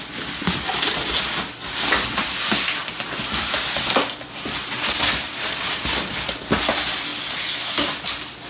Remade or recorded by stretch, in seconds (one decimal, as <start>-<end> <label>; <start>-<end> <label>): 0.0-8.5 recorded